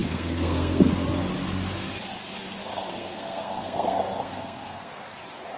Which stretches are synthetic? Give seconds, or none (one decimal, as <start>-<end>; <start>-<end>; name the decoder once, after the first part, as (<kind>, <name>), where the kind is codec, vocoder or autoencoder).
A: 0.0-0.9 (codec, SNAC); 2.6-5.0